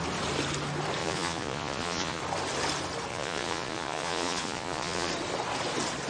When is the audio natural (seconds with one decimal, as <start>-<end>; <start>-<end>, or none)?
0.0-1.0; 2.2-3.1; 5.1-6.1